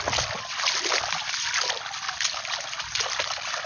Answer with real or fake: real